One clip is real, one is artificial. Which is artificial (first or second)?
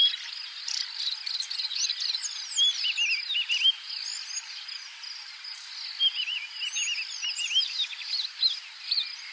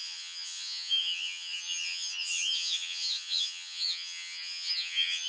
second